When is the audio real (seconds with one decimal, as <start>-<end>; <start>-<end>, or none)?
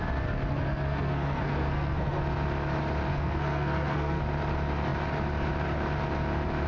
0.0-0.5; 2.2-3.1; 4.2-6.7